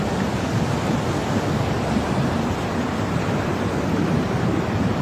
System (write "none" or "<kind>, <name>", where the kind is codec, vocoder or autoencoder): none